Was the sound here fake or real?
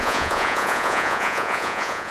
fake